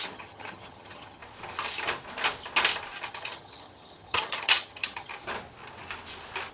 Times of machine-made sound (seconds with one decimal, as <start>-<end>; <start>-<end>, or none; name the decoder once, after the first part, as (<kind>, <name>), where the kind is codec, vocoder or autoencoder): 0.0-1.2 (vocoder, HiFi-GAN); 3.1-5.1